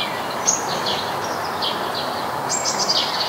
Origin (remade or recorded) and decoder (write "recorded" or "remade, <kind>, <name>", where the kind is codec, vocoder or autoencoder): recorded